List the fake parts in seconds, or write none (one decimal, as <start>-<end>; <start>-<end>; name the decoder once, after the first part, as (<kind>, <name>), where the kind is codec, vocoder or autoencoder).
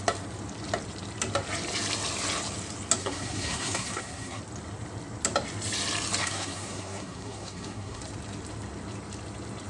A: 3.0-4.4 (codec, SNAC); 6.2-8.0